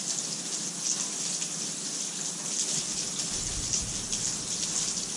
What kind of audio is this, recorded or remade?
recorded